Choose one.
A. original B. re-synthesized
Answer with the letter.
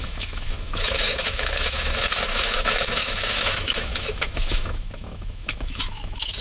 B